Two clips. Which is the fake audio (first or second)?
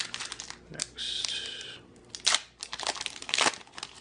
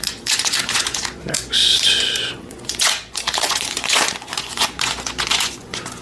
second